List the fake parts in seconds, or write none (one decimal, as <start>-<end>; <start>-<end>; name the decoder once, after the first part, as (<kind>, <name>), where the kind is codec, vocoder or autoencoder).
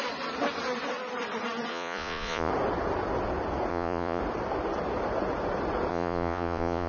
1.7-2.5 (vocoder, Vocos); 3.7-4.2; 5.9-6.9